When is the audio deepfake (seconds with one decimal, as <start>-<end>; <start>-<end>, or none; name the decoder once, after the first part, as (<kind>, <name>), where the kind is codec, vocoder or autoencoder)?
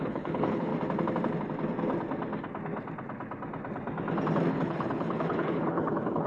0.0-0.7 (codec, HILCodec); 4.5-6.3